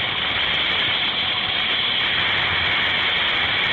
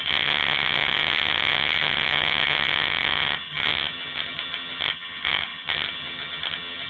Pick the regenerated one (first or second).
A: second